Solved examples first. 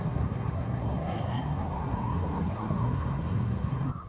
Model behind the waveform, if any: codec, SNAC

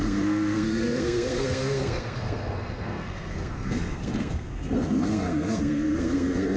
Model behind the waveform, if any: codec, SNAC